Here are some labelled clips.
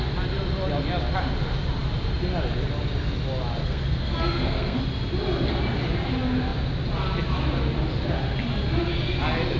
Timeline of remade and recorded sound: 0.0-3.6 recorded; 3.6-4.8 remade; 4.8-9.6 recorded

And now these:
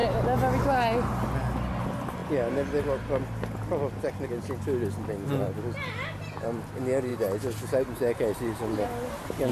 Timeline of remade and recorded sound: 0.0-9.5 recorded

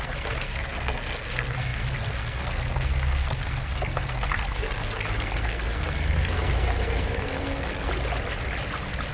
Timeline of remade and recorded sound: 0.0-7.9 remade; 7.9-9.1 recorded

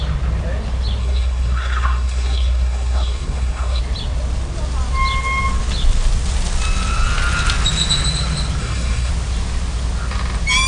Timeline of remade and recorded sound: 0.0-1.0 recorded; 1.0-3.8 remade; 3.8-8.6 recorded; 8.6-9.1 remade; 9.1-10.7 recorded